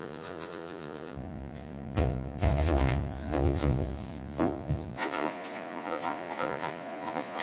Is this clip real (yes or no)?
no